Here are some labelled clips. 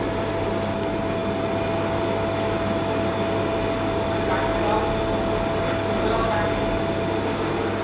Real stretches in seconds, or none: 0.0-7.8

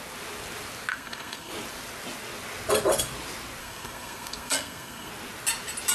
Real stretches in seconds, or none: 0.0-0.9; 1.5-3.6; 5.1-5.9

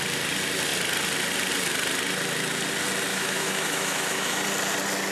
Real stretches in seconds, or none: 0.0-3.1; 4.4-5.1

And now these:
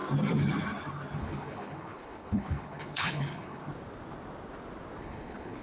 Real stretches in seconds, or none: 0.0-1.2; 3.6-5.0

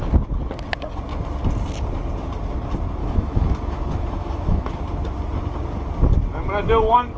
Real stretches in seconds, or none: 0.0-3.0; 4.8-7.2

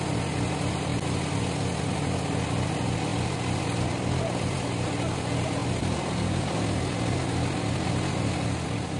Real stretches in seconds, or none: 0.0-9.0